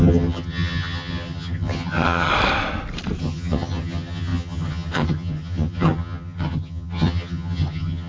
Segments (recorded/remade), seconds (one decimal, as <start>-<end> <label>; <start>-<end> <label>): 0.0-2.3 remade; 2.3-3.2 recorded; 3.2-8.1 remade